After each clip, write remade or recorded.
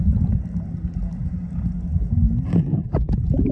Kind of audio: recorded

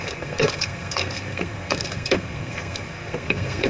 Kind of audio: remade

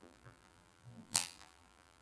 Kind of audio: remade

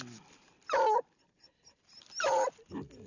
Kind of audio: recorded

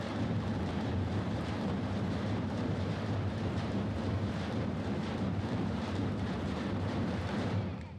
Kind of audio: remade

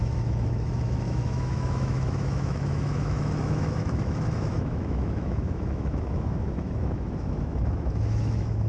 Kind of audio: remade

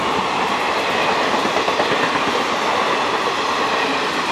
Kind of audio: recorded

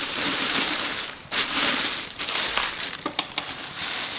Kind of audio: remade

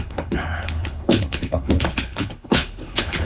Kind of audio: remade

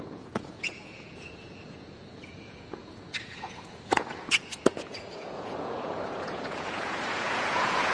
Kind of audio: remade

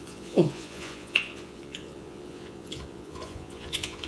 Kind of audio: remade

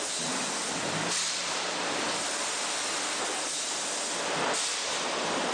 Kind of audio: recorded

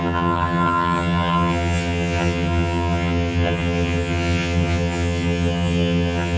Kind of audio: remade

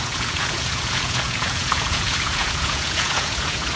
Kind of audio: remade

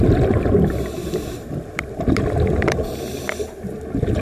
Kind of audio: recorded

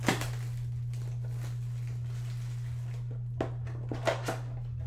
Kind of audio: recorded